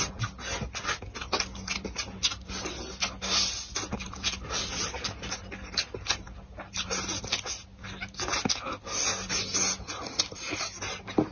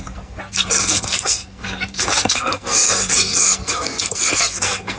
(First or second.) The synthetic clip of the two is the second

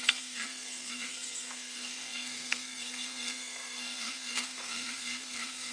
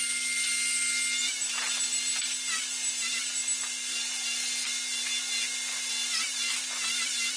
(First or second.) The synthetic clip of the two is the first